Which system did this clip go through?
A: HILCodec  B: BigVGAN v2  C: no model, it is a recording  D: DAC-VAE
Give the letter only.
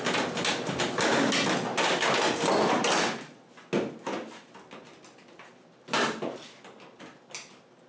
C